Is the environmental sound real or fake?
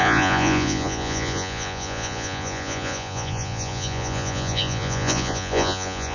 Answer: fake